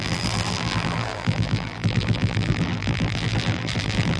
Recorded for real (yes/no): no